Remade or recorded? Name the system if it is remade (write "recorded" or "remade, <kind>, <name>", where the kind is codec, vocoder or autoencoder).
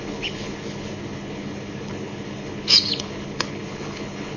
remade, codec, HILCodec